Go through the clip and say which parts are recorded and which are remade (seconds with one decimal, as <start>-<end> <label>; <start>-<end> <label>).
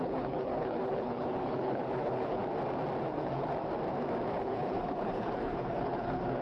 0.0-2.4 remade; 2.4-3.0 recorded; 3.0-3.5 remade; 3.5-4.3 recorded; 4.3-6.4 remade